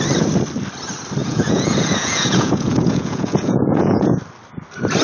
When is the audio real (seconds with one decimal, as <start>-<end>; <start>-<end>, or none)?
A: 0.0-1.2; 4.2-5.0